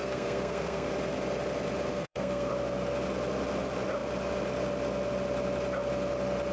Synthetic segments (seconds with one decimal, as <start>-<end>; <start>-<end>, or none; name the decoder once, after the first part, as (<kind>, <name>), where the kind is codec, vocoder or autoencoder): 0.0-0.9 (codec, SNAC); 1.9-2.5